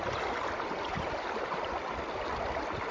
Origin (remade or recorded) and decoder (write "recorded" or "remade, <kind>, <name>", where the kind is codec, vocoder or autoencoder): recorded